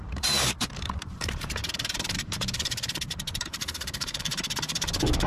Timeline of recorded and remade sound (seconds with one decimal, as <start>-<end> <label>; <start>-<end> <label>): 0.0-5.3 remade